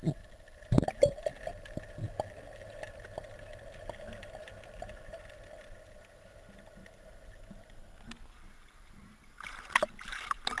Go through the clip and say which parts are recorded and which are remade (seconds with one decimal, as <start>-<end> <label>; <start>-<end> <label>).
0.0-10.6 recorded